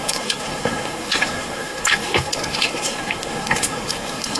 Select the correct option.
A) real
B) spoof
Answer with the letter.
B